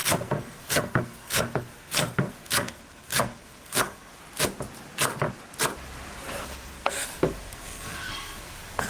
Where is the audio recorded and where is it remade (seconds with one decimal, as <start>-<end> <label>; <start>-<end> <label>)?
0.0-4.1 remade; 4.1-6.4 recorded; 6.4-8.9 remade